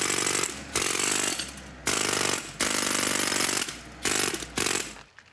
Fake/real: real